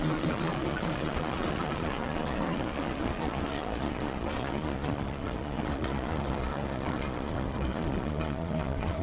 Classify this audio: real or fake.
fake